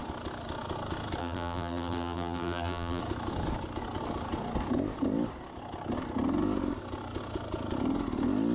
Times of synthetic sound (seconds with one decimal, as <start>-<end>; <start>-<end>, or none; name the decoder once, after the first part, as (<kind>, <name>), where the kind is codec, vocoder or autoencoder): 1.2-3.0 (vocoder, BigVGAN v2)

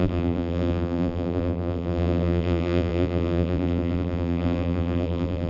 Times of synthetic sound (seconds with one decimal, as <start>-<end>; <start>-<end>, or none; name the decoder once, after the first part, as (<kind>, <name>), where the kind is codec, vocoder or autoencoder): 0.0-5.5 (vocoder, BigVGAN v2)

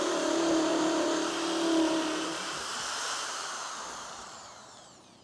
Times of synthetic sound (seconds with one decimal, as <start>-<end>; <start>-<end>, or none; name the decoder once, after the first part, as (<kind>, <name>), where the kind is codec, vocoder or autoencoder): 0.0-2.3 (vocoder, BigVGAN v2); 3.1-5.2

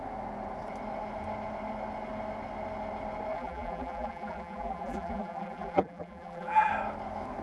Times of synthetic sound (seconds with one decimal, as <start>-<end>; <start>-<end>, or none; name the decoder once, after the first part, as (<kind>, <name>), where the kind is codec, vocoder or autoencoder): 3.3-6.7 (vocoder, BigVGAN v2)